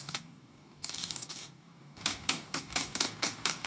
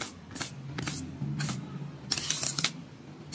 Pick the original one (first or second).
second